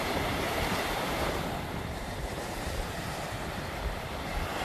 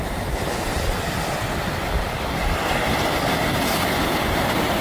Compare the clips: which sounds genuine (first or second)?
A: second